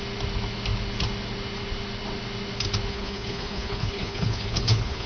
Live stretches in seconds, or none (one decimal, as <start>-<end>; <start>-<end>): 0.0-2.9